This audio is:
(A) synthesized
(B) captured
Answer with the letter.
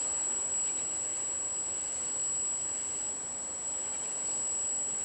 B